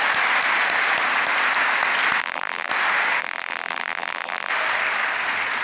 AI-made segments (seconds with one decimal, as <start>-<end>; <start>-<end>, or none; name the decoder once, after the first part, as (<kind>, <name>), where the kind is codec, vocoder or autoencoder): 2.2-2.7 (vocoder, BigVGAN v2); 3.2-4.5